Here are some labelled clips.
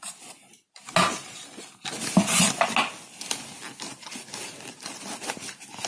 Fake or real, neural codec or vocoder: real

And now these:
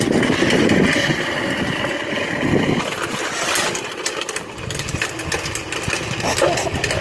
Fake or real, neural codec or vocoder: real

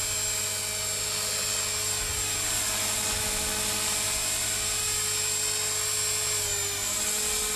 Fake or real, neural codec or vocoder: real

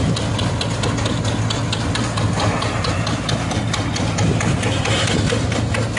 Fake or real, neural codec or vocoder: real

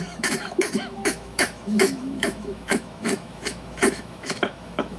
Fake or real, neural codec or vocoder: fake, autoencoder, DAC-VAE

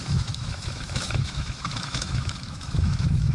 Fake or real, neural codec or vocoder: fake, autoencoder, DAC-VAE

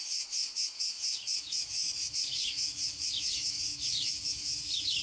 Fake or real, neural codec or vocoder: fake, autoencoder, DAC-VAE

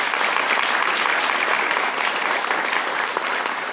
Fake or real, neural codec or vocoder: real